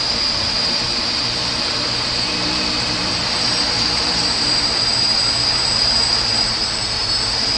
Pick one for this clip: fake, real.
fake